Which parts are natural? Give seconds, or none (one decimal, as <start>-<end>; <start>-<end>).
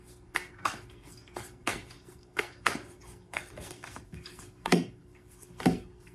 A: none